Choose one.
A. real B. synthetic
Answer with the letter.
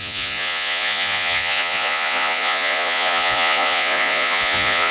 B